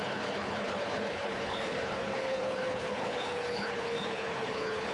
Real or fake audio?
fake